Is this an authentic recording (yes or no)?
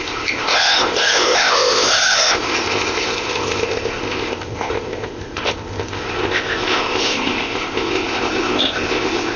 no